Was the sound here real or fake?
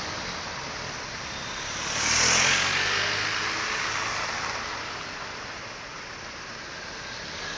real